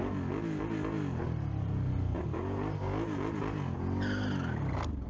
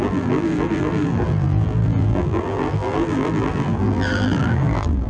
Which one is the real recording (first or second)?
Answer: first